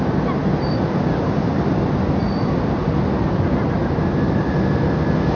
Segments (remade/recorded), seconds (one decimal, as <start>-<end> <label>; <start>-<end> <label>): 0.0-5.4 recorded